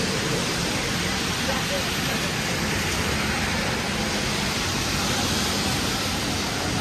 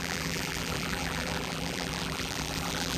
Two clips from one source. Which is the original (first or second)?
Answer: first